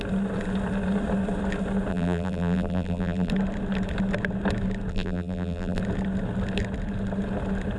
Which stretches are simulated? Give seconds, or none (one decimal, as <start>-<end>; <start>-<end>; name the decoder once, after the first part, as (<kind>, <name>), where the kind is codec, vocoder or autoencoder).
1.9-3.3 (vocoder, BigVGAN v2); 4.9-5.8